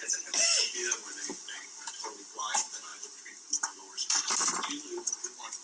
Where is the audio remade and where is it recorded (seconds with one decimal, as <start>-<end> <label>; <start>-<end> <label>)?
0.0-1.0 remade; 1.0-2.2 recorded; 2.2-5.6 remade